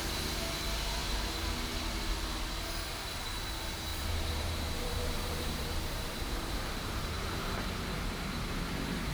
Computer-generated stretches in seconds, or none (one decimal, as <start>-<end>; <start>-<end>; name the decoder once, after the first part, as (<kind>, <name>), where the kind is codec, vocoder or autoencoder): 3.9-7.0 (vocoder, BigVGAN v2)